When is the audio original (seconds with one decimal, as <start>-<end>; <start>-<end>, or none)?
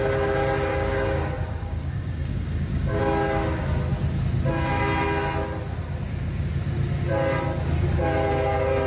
0.0-0.7; 3.0-8.9